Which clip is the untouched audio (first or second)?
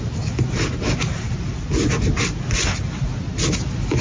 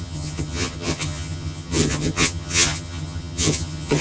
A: first